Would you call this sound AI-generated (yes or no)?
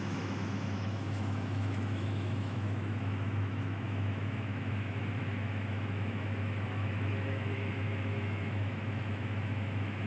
yes